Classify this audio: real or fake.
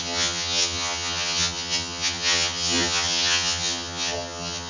fake